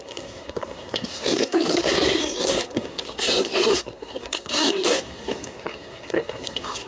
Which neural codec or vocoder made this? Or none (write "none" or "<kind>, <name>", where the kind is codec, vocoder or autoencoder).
codec, SNAC